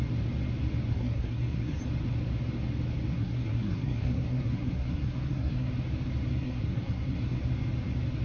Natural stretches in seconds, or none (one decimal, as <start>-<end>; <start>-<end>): 0.0-0.9; 1.8-3.1; 5.7-6.3; 7.4-8.2